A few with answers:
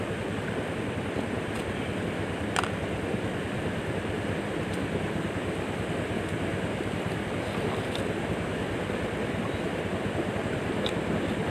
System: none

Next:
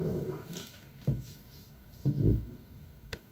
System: codec, DAC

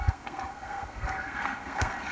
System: codec, SNAC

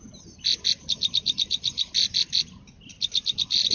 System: none